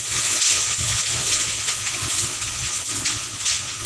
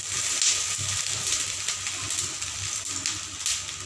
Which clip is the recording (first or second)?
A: second